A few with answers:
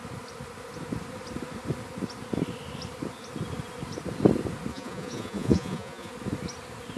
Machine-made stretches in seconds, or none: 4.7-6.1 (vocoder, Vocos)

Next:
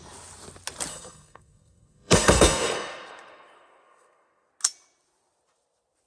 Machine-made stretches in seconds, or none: 0.9-4.5 (codec, SNAC)

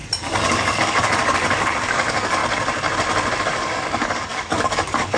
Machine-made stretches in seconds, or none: 0.5-2.4 (codec, DAC); 3.4-5.2

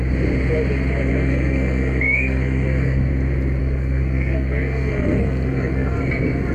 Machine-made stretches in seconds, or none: 1.1-3.1 (codec, SNAC); 3.6-6.0